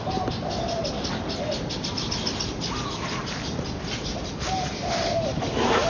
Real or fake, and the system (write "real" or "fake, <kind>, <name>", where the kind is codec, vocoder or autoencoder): real